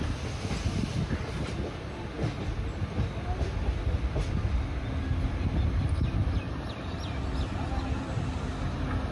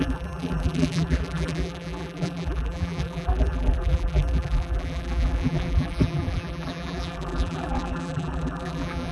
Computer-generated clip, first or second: second